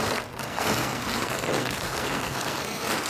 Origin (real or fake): fake